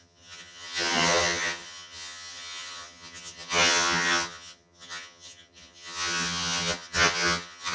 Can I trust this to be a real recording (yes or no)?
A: no